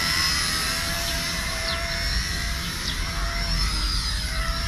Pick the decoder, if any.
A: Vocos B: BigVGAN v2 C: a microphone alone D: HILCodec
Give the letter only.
B